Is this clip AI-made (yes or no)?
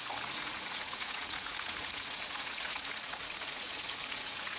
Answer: yes